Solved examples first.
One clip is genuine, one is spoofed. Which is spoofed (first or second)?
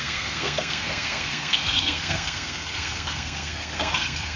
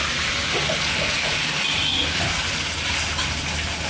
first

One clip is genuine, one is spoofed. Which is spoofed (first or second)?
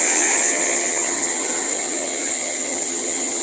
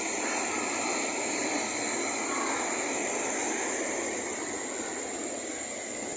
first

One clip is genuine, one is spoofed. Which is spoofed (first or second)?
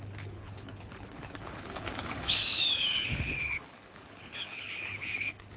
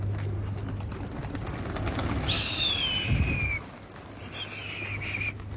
first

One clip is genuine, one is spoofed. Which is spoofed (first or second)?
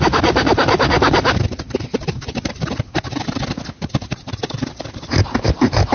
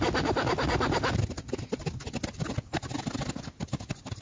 first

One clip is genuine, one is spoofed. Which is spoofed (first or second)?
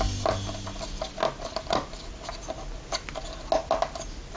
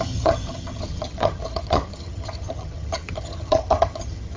second